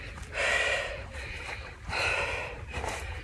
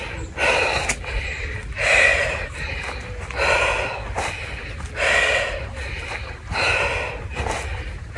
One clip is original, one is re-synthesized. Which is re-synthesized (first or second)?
first